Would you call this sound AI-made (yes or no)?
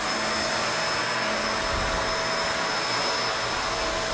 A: no